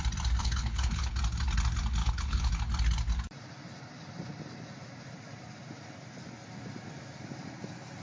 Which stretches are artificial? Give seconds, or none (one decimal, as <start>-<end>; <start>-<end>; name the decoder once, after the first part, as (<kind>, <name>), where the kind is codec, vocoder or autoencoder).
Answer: 0.4-1.1 (codec, HILCodec); 2.0-2.5